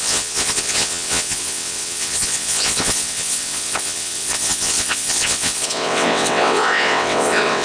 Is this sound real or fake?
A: fake